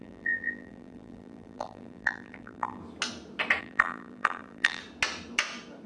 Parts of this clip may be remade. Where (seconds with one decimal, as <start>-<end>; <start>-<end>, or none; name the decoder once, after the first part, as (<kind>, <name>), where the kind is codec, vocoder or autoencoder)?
0.0-2.8 (vocoder, BigVGAN v2); 3.6-4.8

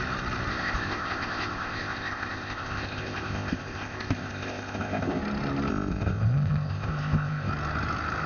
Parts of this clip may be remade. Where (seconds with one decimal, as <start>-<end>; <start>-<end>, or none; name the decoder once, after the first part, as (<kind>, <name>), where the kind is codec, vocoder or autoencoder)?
0.5-5.2 (codec, ZipCodec); 5.7-7.5